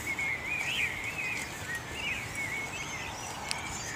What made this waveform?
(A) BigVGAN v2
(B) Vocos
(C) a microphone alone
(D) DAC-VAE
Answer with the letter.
C